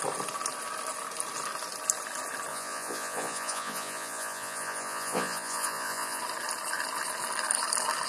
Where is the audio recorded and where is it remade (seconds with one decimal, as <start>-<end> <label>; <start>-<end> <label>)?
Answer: 0.0-2.5 recorded; 2.5-6.2 remade; 6.2-8.1 recorded